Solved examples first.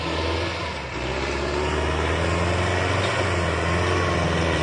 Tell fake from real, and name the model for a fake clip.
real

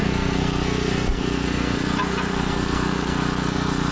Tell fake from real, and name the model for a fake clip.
fake, codec, SNAC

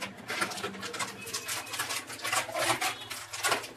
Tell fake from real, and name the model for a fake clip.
real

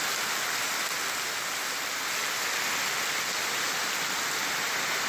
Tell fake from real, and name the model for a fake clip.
real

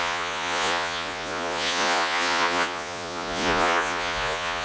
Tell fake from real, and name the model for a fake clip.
fake, vocoder, Vocos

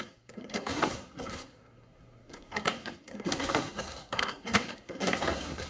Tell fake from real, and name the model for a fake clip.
fake, codec, SNAC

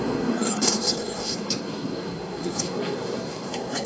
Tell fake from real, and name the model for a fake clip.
fake, codec, SNAC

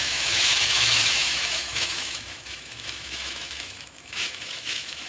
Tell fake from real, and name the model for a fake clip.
fake, autoencoder, DAC-VAE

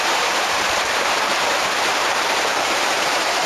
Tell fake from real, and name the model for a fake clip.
fake, vocoder, BigVGAN v2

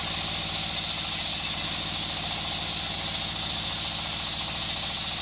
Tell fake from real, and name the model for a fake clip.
real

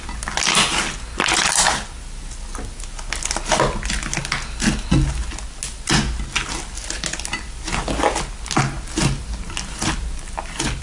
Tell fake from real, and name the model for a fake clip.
real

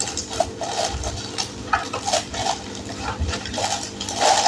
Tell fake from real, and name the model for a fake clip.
real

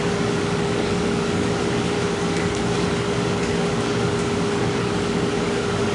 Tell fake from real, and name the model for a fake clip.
fake, codec, DAC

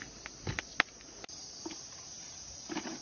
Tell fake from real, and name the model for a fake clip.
real